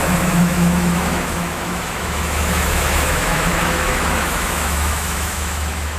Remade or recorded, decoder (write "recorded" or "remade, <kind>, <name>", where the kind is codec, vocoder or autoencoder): remade, autoencoder, DAC-VAE